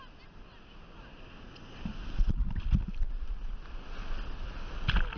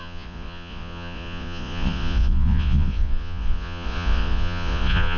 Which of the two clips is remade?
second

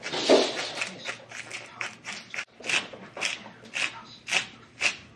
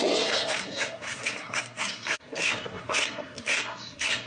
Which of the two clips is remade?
second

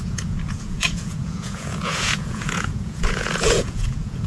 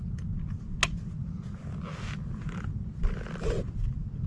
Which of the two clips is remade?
first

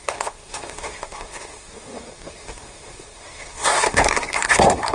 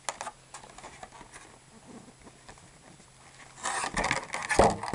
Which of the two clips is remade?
first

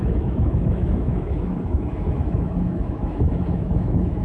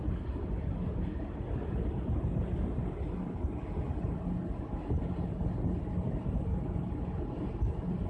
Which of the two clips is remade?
first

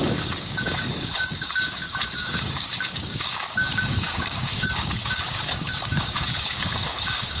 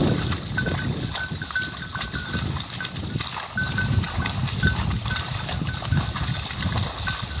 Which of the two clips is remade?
first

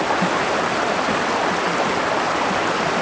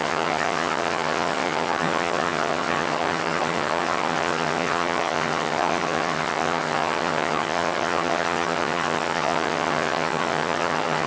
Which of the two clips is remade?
second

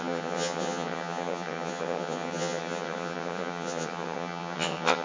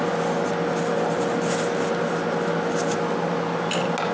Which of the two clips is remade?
first